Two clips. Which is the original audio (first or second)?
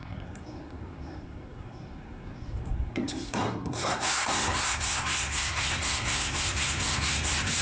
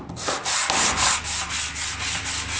second